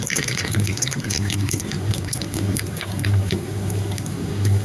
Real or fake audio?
fake